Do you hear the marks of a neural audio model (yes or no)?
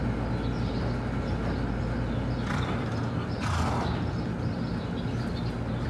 no